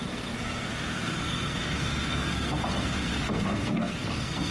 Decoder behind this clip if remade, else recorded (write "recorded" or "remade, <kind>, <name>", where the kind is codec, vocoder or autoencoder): remade, codec, SNAC